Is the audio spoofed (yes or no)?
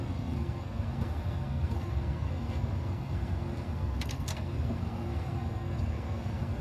yes